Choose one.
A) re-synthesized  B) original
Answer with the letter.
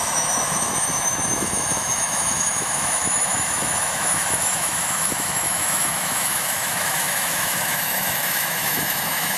A